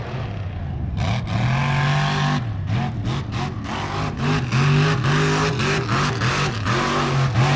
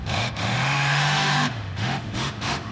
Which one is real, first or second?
first